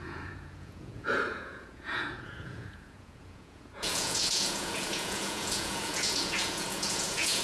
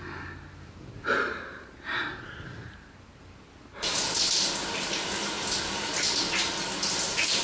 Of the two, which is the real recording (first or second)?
second